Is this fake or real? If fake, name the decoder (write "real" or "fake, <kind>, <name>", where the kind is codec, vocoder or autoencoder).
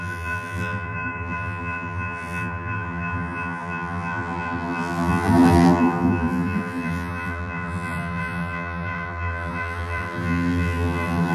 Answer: fake, vocoder, BigVGAN v2